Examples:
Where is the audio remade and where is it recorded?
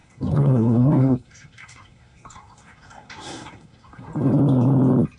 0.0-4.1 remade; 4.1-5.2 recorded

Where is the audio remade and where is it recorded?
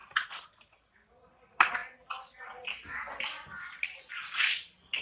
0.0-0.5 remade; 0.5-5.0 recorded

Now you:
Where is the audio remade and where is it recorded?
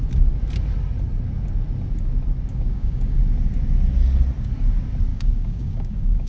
0.0-2.5 recorded; 2.5-3.2 remade; 3.2-5.1 recorded; 5.1-6.3 remade